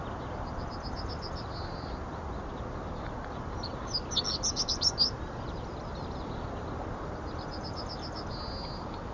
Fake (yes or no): no